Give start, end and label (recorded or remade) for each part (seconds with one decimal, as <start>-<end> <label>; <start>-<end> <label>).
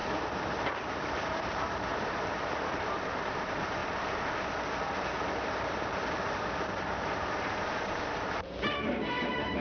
0.0-3.8 remade; 3.8-5.7 recorded; 5.7-9.6 remade